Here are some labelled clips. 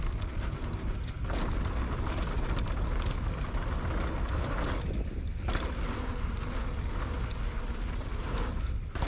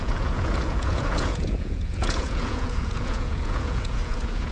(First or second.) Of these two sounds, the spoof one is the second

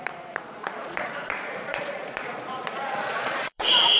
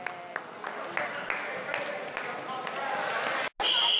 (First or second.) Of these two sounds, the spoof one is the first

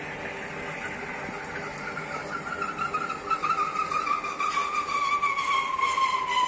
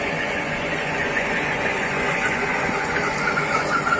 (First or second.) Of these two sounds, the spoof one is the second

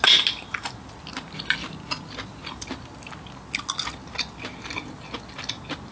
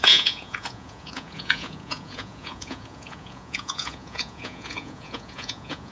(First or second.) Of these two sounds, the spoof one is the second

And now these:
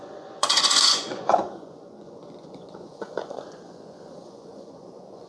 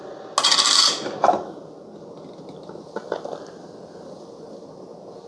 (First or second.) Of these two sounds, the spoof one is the first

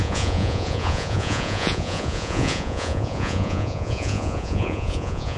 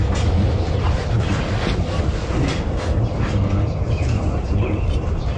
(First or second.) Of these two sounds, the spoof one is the first